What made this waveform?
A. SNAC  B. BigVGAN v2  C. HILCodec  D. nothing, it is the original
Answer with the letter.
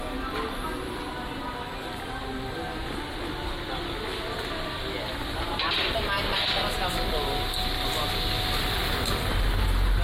D